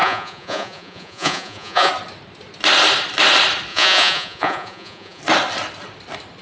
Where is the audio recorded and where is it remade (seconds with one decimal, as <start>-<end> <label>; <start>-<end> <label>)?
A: 0.0-1.9 remade; 1.9-3.7 recorded; 3.7-5.2 remade; 5.2-6.4 recorded